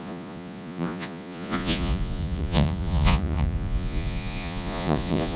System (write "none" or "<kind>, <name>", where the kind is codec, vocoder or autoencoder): vocoder, Vocos